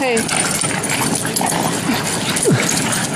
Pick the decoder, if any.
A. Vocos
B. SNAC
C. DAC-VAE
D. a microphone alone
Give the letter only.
D